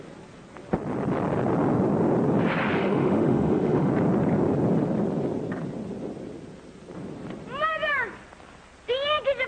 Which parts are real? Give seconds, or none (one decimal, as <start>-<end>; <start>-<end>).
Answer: 0.0-2.8; 3.9-9.5